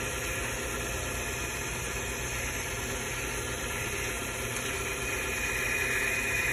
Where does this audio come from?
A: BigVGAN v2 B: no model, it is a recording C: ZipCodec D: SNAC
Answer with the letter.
A